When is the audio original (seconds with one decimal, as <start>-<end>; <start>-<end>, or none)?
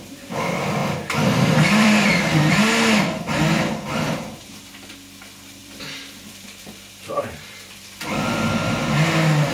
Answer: 0.0-0.8; 2.5-5.6; 8.8-9.5